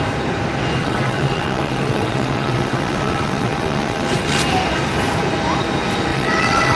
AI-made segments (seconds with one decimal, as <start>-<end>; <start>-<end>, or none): 0.8-4.4; 6.1-6.8